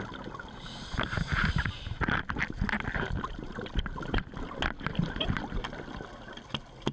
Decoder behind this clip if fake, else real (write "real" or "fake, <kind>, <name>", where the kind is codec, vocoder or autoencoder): real